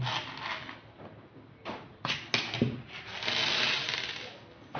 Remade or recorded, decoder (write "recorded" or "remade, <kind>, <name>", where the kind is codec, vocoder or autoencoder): recorded